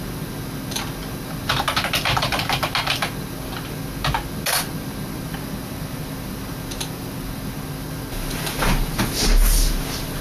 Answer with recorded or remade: recorded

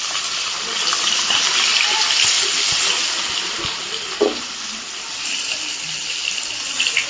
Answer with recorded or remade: recorded